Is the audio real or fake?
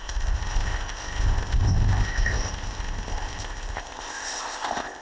fake